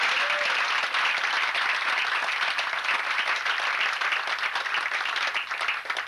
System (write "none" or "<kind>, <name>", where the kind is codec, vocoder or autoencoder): none